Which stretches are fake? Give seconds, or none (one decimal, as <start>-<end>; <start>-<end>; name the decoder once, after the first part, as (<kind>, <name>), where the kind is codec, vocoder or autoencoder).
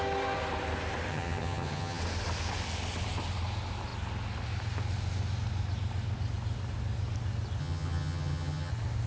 1.1-2.0 (vocoder, HiFi-GAN); 7.6-8.7